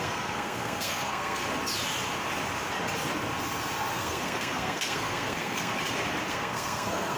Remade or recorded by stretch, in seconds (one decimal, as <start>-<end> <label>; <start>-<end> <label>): 0.0-1.4 remade; 1.4-3.9 recorded; 3.9-5.7 remade; 5.7-6.3 recorded; 6.3-7.2 remade